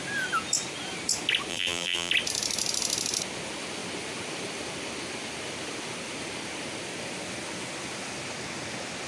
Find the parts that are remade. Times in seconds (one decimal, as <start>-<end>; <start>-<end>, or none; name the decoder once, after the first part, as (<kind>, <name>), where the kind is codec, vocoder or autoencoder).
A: 1.5-2.1 (vocoder, BigVGAN v2)

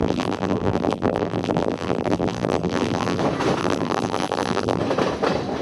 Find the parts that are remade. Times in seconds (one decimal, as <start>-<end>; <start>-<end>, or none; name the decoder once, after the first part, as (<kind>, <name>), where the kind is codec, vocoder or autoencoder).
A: 0.0-3.2 (vocoder, BigVGAN v2); 3.6-4.8

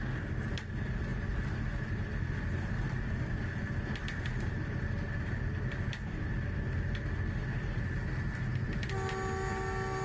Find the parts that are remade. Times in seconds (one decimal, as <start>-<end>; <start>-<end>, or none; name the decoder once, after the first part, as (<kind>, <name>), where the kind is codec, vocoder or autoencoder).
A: none

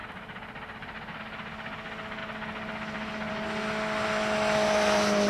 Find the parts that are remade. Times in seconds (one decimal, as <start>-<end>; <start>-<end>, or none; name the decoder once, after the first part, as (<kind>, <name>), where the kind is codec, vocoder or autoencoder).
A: none

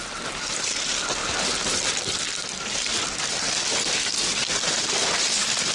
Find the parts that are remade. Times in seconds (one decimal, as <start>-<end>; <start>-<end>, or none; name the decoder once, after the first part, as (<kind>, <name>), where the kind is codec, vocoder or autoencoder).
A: 0.0-1.2 (vocoder, BigVGAN v2); 1.8-2.9; 4.0-5.7

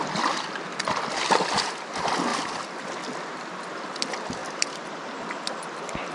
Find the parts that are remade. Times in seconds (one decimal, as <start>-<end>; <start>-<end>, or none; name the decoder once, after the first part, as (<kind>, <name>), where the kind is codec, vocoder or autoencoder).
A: 2.3-2.8 (vocoder, BigVGAN v2); 4.4-5.1

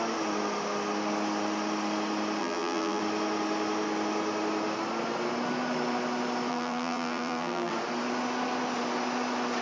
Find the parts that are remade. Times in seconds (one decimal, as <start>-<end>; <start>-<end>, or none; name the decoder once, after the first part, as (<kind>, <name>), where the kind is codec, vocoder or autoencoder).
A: 2.4-3.0 (vocoder, BigVGAN v2); 6.5-7.7

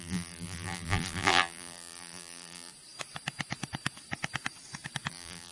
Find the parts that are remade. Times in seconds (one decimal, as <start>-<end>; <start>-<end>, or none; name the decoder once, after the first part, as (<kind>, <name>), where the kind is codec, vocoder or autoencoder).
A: 0.0-2.7 (vocoder, BigVGAN v2); 5.1-5.5